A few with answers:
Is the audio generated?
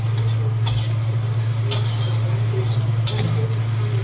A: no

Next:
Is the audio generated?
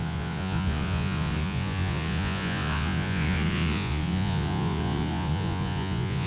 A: yes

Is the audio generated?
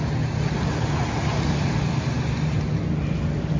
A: no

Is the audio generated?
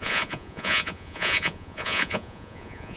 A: yes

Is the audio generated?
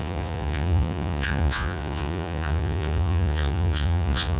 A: yes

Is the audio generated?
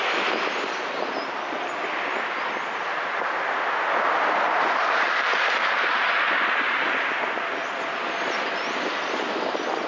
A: no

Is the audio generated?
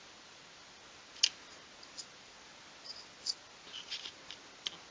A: no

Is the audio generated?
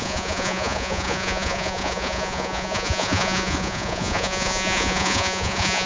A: yes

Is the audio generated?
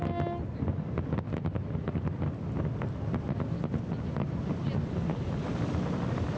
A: no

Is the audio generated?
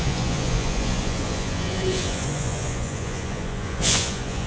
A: yes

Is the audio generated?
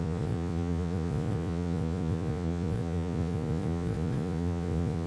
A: yes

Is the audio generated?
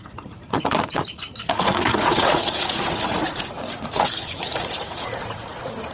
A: yes